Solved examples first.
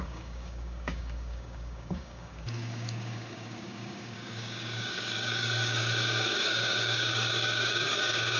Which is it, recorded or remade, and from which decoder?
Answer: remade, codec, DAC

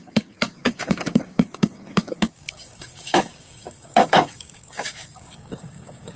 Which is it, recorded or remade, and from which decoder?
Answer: remade, codec, DAC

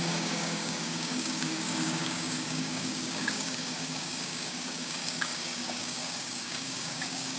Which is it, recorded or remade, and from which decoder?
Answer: remade, codec, DAC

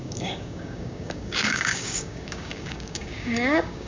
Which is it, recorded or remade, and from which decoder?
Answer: remade, codec, DAC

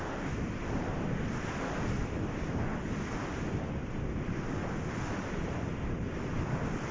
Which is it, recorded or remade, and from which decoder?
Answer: recorded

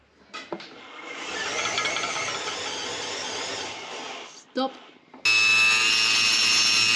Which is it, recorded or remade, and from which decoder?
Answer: recorded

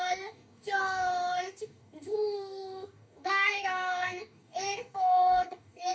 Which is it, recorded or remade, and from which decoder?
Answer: remade, codec, DAC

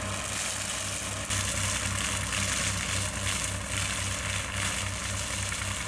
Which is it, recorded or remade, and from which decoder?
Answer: recorded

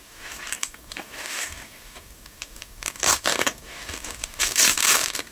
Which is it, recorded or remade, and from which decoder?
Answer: remade, codec, DAC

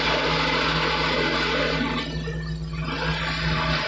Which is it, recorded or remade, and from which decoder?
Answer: recorded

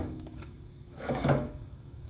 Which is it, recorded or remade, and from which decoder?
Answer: remade, codec, DAC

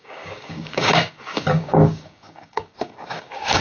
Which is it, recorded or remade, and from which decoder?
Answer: remade, codec, DAC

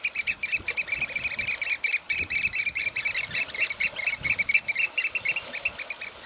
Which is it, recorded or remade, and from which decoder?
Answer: recorded